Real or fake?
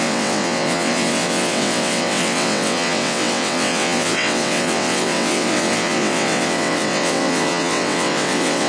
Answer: fake